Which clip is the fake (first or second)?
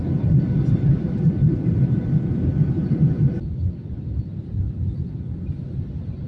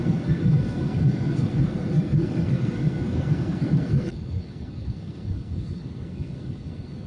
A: second